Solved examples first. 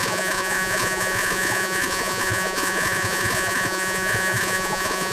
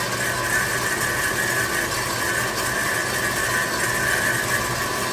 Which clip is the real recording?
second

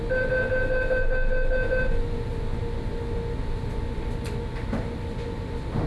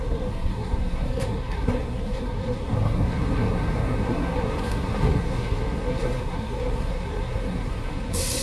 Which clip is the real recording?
first